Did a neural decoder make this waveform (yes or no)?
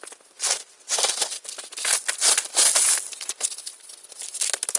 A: no